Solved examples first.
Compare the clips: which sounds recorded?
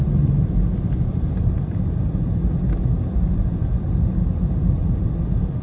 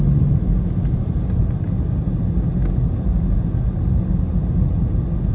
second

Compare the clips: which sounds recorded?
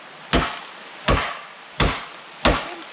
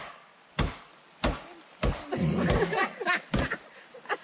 first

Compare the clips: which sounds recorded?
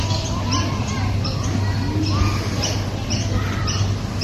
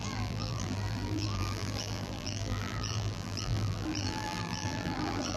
first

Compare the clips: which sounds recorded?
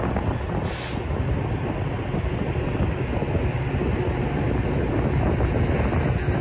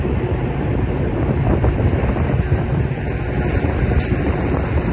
first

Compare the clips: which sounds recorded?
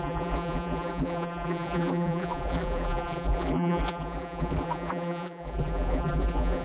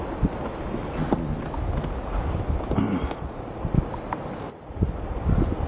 second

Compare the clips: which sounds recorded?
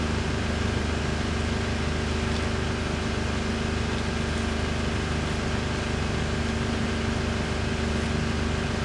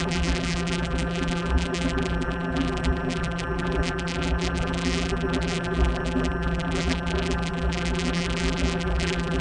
first